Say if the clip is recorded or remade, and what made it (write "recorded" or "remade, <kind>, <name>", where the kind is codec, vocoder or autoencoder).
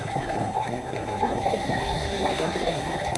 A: remade, codec, SNAC